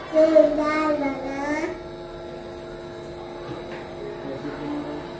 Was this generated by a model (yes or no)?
no